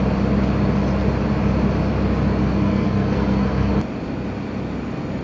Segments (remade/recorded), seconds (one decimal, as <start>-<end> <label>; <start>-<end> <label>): 0.0-2.4 recorded; 2.4-3.7 remade; 3.7-5.2 recorded